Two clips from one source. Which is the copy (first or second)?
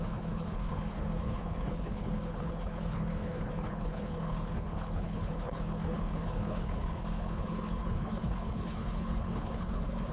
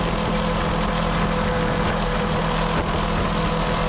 first